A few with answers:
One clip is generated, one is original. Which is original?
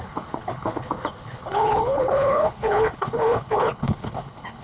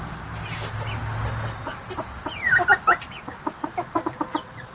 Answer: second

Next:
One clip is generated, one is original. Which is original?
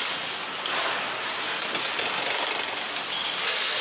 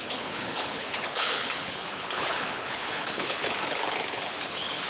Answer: first